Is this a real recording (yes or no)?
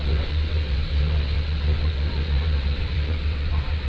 no